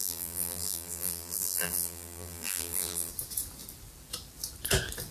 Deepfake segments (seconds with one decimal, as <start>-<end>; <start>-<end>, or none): 0.0-3.1